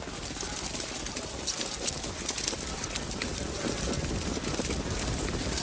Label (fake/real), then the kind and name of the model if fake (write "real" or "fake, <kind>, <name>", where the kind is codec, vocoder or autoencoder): real